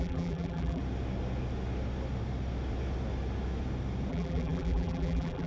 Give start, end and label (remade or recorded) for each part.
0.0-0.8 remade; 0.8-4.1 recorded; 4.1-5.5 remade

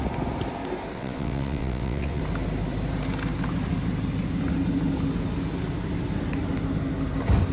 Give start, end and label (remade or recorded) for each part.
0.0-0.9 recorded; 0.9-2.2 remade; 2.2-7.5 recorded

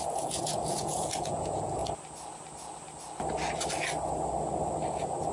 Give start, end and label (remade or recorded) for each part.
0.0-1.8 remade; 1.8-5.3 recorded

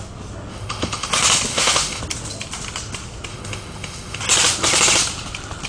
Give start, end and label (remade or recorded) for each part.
0.0-0.5 recorded; 0.5-1.1 remade; 1.1-1.5 recorded; 1.5-2.0 remade; 2.0-3.3 recorded; 3.3-4.2 remade; 4.2-5.7 recorded